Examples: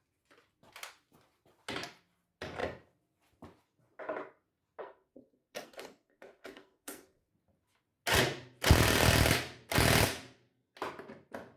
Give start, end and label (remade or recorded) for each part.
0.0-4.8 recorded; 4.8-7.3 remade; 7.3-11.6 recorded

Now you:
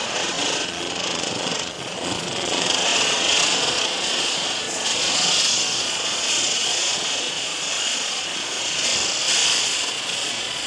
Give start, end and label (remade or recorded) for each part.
0.0-8.9 remade; 8.9-9.6 recorded; 9.6-10.7 remade

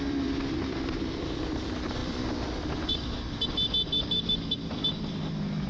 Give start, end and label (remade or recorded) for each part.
0.0-5.7 remade

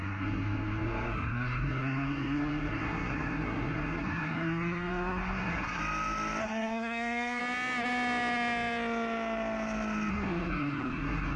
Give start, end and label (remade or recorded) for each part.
0.0-5.8 remade; 5.8-6.4 recorded; 6.4-7.4 remade; 7.4-10.1 recorded; 10.1-11.4 remade

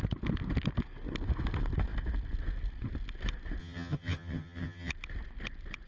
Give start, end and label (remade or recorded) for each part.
0.0-3.6 recorded; 3.6-4.9 remade; 4.9-5.9 recorded

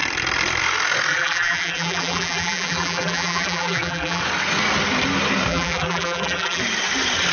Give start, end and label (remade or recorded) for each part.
0.0-1.1 recorded; 1.1-4.2 remade; 4.2-5.5 recorded; 5.5-6.6 remade; 6.6-7.3 recorded

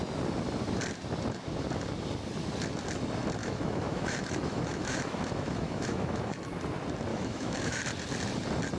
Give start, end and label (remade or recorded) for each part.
0.0-3.4 recorded; 3.4-6.4 remade; 6.4-7.1 recorded; 7.1-7.8 remade; 7.8-8.8 recorded

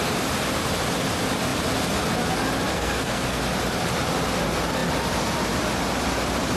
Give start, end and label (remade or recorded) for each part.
0.0-2.7 recorded; 2.7-3.4 remade; 3.4-6.6 recorded